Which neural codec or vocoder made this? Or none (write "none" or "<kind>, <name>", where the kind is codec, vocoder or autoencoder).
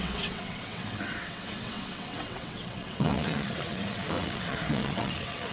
vocoder, WaveNeXt